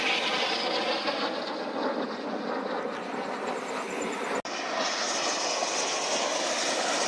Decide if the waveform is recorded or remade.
recorded